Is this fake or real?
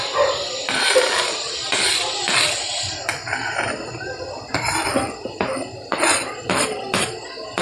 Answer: real